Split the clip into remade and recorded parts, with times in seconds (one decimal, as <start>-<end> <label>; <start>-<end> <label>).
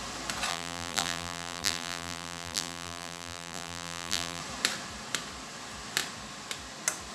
0.0-0.5 recorded; 0.5-4.4 remade; 4.4-7.1 recorded